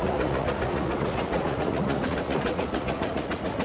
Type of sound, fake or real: fake